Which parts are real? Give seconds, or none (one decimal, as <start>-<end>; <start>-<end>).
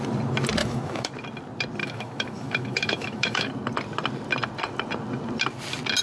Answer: 0.0-0.6; 1.1-1.8; 3.5-6.0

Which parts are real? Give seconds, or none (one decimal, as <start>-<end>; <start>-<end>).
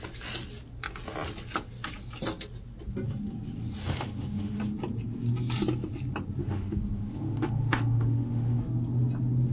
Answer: 0.0-3.8; 4.6-6.4; 8.6-9.5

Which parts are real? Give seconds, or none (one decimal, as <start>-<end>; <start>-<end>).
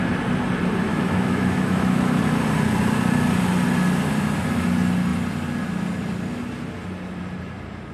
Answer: 0.0-0.9; 2.2-7.9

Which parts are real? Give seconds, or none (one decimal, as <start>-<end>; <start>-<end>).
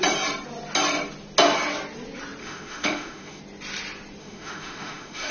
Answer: 0.0-2.4; 3.4-4.2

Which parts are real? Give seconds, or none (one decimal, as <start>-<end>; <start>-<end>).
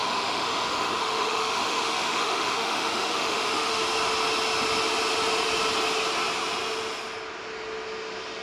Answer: 3.8-8.4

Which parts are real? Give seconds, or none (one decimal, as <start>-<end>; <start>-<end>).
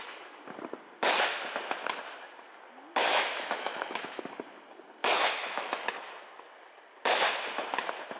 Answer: 0.0-3.0; 4.2-5.0; 5.9-8.2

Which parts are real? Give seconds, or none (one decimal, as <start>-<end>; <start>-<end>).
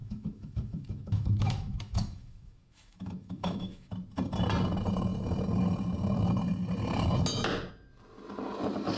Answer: 3.9-9.0